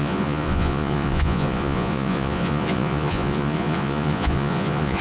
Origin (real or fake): fake